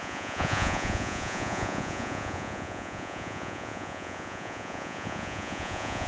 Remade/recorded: remade